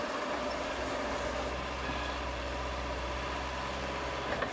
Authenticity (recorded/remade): recorded